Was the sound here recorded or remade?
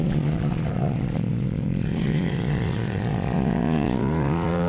remade